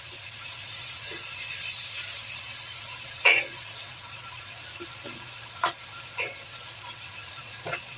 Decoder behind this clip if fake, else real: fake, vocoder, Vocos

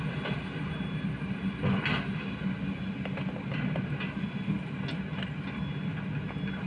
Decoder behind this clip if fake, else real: real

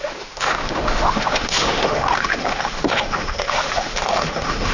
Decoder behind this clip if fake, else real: fake, autoencoder, DAC-VAE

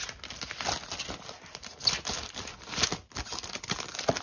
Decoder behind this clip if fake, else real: real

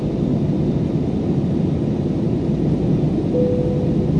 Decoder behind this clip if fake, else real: real